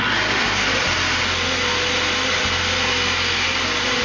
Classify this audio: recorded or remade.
recorded